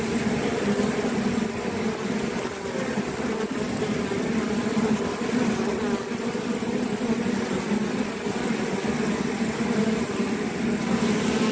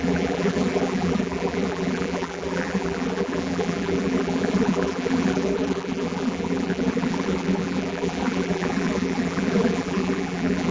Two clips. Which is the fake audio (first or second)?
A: second